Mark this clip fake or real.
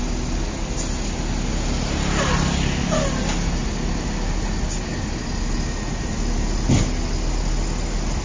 real